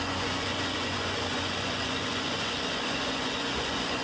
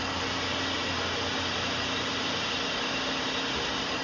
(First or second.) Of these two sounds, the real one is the second